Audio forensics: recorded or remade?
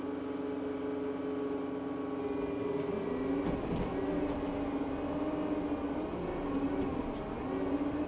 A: recorded